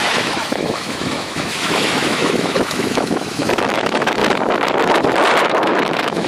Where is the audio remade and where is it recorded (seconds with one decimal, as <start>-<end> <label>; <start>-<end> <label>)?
0.0-4.2 remade; 4.2-5.4 recorded; 5.4-6.3 remade